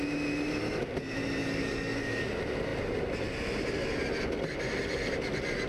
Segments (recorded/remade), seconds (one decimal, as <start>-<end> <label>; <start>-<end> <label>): 0.0-1.4 recorded; 1.4-2.2 remade; 2.2-5.7 recorded